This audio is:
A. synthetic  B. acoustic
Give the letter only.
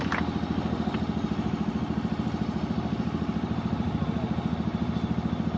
B